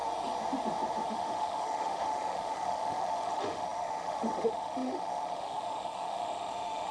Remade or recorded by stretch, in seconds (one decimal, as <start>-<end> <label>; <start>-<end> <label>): 0.0-1.1 recorded; 1.1-6.9 remade